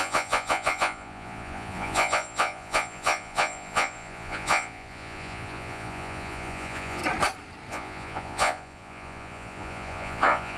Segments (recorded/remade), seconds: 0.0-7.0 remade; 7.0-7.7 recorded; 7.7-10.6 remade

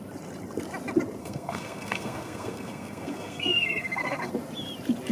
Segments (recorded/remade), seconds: 0.0-1.2 recorded; 1.2-4.3 remade; 4.3-5.1 recorded

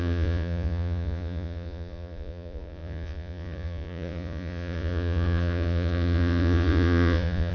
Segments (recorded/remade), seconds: 0.0-7.5 remade

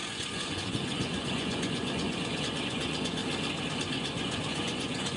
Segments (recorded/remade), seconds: 0.0-3.2 remade; 3.2-3.9 recorded; 3.9-5.2 remade

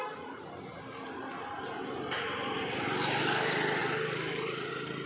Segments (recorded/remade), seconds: 0.0-5.1 recorded

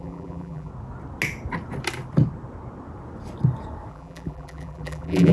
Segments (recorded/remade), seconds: 0.0-0.7 remade; 0.7-3.9 recorded; 3.9-5.3 remade

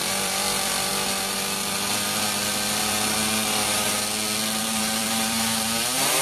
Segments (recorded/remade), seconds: 0.0-0.9 remade; 0.9-4.6 recorded; 4.6-6.2 remade